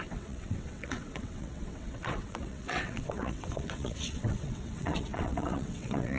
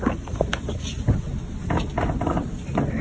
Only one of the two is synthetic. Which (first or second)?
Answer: first